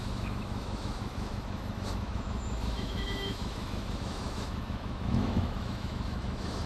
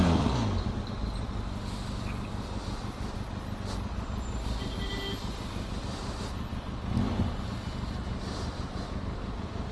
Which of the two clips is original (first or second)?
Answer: second